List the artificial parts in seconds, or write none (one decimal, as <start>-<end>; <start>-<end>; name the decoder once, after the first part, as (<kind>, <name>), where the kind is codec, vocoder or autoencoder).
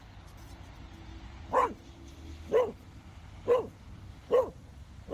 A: 2.3-4.0 (vocoder, BigVGAN v2)